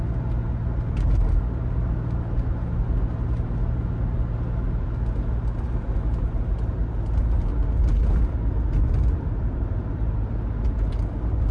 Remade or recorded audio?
recorded